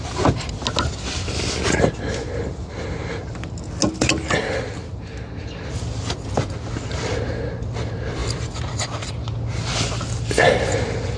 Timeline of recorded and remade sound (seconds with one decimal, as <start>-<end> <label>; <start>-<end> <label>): 0.0-11.2 recorded